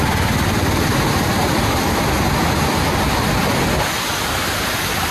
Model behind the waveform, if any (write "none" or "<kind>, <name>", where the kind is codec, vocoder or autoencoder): none